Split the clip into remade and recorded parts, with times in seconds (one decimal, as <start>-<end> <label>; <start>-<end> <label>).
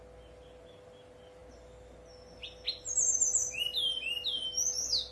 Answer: 0.0-3.4 recorded; 3.4-4.2 remade; 4.2-5.1 recorded